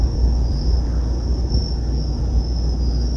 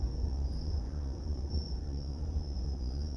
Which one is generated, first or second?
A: second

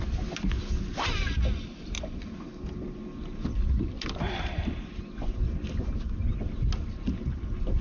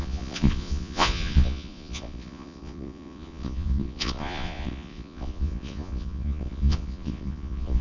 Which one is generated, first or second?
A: second